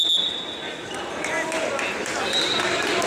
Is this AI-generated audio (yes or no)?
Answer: no